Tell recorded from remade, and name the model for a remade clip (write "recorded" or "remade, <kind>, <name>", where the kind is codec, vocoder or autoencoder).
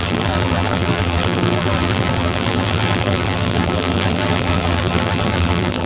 remade, vocoder, BigVGAN v2